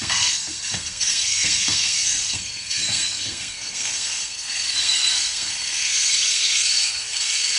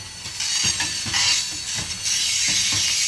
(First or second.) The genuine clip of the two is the second